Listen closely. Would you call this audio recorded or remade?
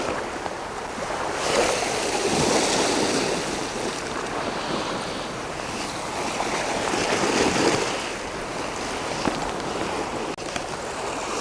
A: recorded